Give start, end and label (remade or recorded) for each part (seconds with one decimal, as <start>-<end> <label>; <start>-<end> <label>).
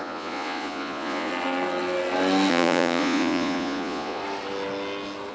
0.0-1.3 remade; 1.3-2.5 recorded; 2.5-4.2 remade; 4.2-5.3 recorded